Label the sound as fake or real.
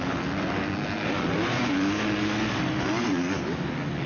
real